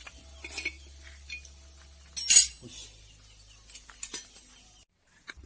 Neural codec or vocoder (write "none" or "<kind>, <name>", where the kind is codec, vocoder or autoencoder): none